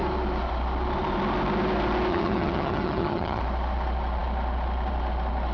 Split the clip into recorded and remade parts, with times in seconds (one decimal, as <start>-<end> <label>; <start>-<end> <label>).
0.0-2.1 recorded; 2.1-3.4 remade; 3.4-5.5 recorded